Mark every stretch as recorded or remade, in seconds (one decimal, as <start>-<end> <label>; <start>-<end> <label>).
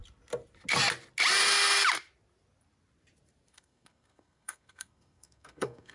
0.0-3.5 recorded; 3.5-5.9 remade